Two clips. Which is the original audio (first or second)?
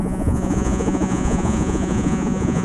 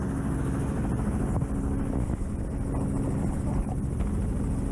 second